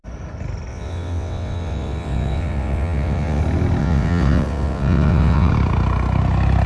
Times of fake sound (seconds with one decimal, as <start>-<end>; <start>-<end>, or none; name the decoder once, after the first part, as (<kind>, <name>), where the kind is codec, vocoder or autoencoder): 0.7-3.4 (vocoder, WaveNeXt); 3.8-5.5